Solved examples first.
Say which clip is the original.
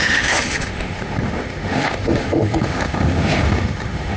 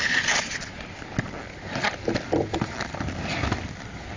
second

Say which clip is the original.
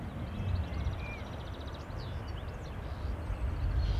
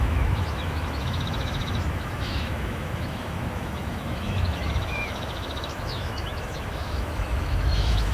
first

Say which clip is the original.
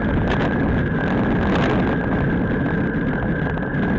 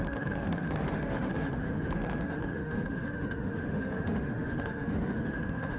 first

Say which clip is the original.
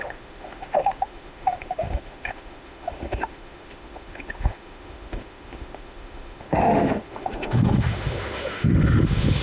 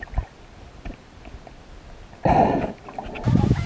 second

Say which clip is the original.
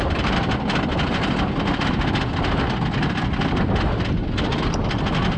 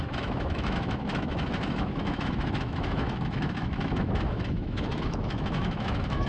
first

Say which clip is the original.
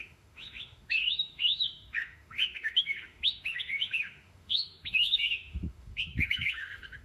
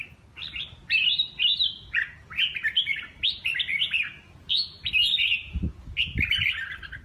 second